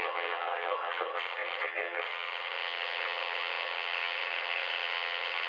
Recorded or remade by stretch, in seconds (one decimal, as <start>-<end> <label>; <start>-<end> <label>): 0.0-5.5 remade